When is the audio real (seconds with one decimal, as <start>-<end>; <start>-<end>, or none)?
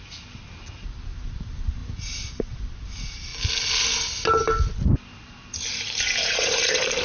1.8-2.4; 3.3-6.0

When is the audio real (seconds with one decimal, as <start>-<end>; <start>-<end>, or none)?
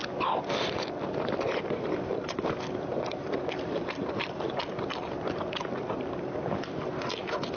none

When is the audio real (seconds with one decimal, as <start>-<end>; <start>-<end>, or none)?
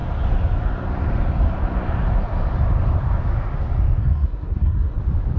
0.0-4.0; 5.0-5.4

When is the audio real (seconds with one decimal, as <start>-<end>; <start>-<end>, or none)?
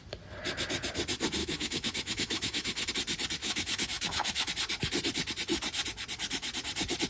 0.0-1.4; 2.9-3.4; 4.5-7.1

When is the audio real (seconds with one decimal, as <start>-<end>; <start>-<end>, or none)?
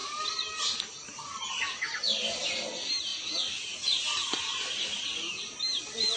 0.0-6.2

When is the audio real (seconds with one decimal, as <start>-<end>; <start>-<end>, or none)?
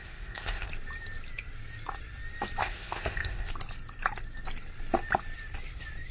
0.7-2.6; 3.5-6.1